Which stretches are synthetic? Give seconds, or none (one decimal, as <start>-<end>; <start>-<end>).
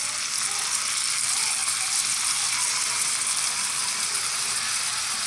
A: none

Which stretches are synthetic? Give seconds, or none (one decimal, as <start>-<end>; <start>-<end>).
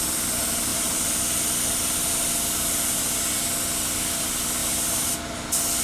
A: 4.6-5.1